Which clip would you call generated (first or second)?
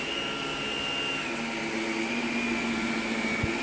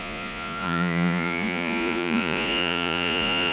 second